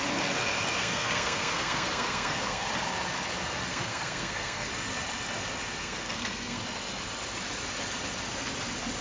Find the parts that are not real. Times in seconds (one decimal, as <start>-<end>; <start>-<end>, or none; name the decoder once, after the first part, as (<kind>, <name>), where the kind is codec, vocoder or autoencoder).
0.8-2.7 (codec, SNAC); 3.7-4.7; 5.8-6.6